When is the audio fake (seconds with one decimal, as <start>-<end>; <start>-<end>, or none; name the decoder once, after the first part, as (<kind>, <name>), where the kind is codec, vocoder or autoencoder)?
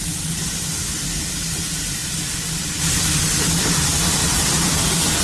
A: 4.2-4.7 (vocoder, BigVGAN v2)